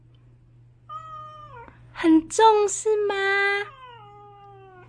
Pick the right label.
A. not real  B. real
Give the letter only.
B